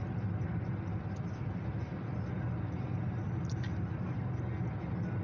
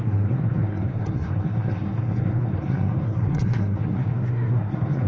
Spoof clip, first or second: second